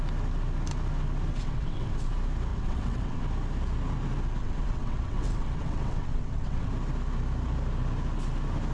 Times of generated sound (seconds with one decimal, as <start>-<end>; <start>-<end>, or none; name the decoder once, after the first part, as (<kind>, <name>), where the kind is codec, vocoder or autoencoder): 1.3-2.1 (vocoder, WaveNeXt); 2.5-3.2; 4.4-6.7